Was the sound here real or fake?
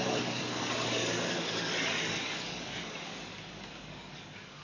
fake